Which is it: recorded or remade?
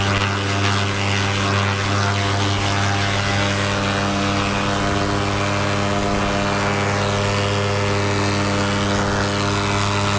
recorded